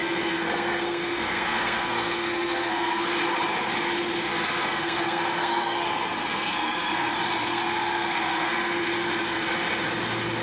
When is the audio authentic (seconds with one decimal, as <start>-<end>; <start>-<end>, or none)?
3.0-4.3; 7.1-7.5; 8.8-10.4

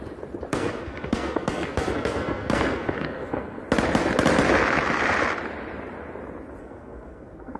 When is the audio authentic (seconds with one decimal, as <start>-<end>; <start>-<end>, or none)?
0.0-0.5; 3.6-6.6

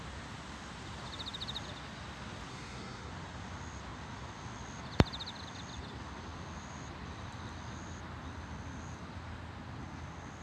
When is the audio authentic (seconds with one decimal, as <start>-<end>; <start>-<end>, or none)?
0.0-2.5; 3.1-10.4